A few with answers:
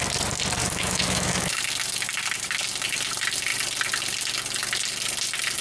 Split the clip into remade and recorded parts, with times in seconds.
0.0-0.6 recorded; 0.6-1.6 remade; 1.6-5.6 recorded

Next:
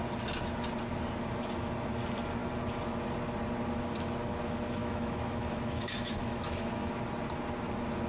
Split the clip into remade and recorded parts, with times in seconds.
0.0-4.8 recorded; 4.8-6.9 remade; 6.9-8.1 recorded

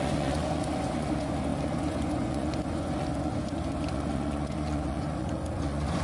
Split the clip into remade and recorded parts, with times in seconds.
0.0-6.0 remade